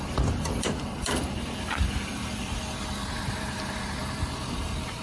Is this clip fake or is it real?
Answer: fake